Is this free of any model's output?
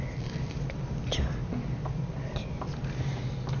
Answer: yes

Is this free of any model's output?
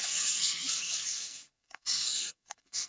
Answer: no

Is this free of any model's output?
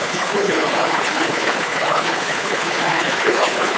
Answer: no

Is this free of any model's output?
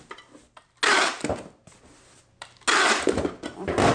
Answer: yes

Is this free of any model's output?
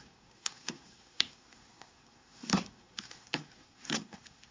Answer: no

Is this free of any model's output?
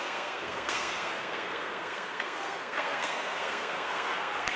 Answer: no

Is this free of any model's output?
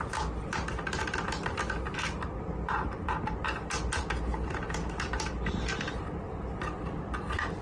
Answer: yes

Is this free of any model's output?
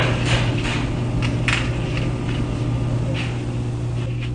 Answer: yes